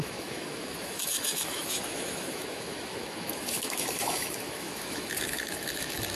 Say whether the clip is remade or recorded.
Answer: remade